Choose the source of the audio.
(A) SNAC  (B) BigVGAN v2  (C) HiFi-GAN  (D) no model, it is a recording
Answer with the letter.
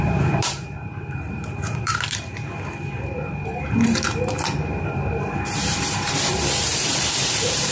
B